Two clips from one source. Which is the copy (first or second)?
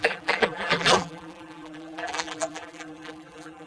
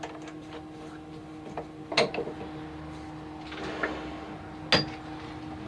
first